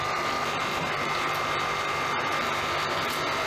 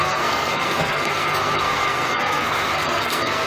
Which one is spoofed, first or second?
second